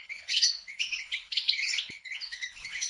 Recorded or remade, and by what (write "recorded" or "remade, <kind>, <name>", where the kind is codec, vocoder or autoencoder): remade, codec, HILCodec